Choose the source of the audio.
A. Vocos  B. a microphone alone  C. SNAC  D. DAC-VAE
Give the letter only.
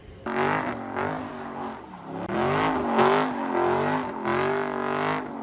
B